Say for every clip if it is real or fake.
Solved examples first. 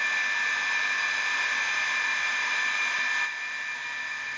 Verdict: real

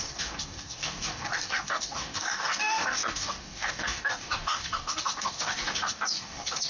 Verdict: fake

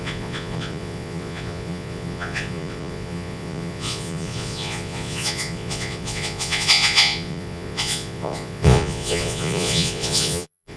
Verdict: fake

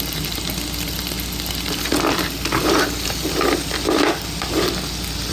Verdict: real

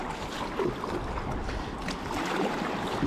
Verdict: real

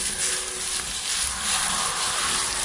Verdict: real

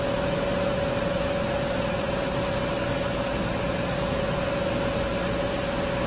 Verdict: real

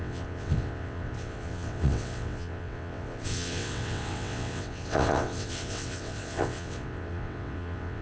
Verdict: fake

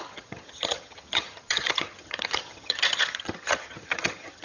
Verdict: fake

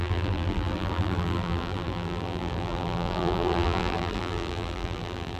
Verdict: fake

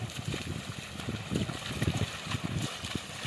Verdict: real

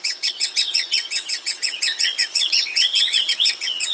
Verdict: fake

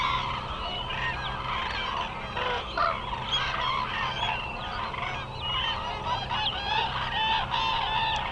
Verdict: real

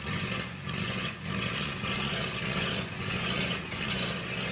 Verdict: fake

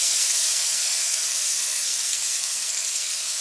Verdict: fake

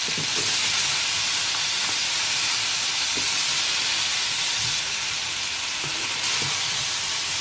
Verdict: real